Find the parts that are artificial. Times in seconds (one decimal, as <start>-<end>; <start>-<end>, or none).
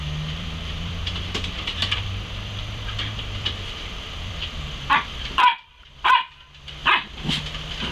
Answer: 0.0-6.8; 7.4-7.9